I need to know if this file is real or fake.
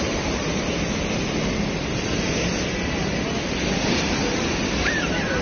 real